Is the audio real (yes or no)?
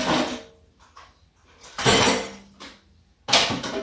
yes